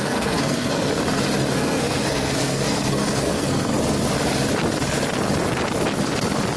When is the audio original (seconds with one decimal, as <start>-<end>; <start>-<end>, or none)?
0.9-1.5; 3.7-6.6